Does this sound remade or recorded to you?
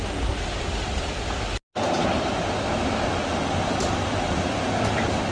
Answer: recorded